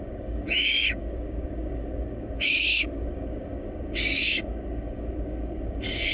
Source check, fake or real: fake